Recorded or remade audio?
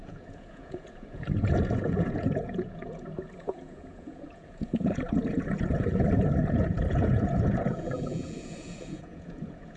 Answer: remade